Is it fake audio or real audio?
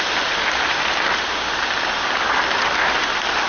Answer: real